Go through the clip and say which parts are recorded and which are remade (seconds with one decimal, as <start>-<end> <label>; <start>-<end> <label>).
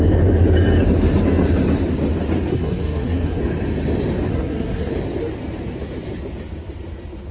0.0-2.5 recorded; 2.5-3.4 remade; 3.4-4.3 recorded; 4.3-4.9 remade; 4.9-7.3 recorded